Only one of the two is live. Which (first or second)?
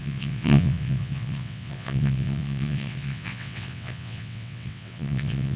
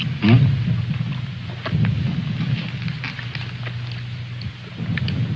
second